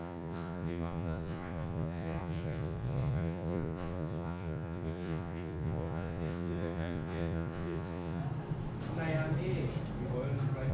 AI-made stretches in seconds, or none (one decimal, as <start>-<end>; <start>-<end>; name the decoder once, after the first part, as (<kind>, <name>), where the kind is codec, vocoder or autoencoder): 0.0-8.2 (vocoder, Vocos)

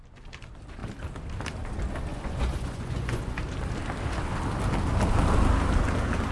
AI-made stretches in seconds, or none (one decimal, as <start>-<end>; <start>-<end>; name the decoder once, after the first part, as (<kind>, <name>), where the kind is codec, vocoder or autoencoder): 2.1-3.4 (vocoder, Vocos)

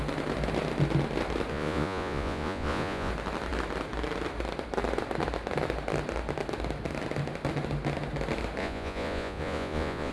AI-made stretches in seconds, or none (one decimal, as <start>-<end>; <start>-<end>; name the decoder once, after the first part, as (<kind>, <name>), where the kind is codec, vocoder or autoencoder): 1.5-3.1 (vocoder, Vocos); 8.6-10.1